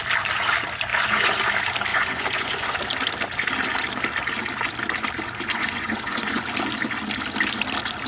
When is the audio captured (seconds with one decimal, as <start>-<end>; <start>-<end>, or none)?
0.0-0.9; 1.4-1.9; 2.8-5.5; 6.4-8.1